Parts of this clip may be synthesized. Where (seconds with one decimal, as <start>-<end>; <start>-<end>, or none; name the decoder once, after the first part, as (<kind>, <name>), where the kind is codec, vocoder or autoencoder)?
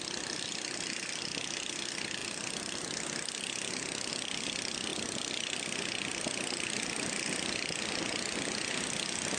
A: none